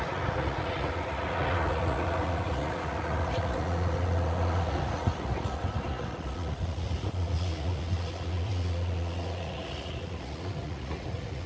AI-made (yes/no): yes